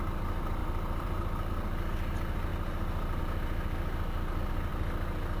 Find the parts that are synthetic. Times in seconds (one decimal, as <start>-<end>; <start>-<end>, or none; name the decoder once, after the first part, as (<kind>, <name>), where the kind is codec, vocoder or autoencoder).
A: 0.6-1.5 (vocoder, BigVGAN v2)